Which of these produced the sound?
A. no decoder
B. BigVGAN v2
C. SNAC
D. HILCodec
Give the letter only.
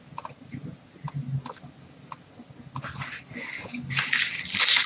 A